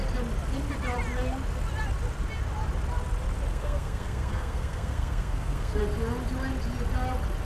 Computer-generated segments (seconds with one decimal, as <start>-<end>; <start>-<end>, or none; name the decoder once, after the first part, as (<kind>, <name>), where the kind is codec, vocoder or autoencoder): 3.5-5.8 (codec, SNAC)